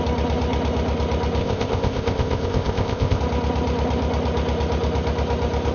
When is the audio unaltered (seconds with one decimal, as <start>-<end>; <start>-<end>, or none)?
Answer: 0.0-1.4; 3.2-5.7